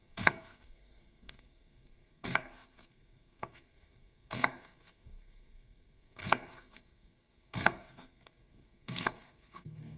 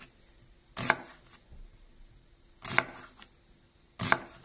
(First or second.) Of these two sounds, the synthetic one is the first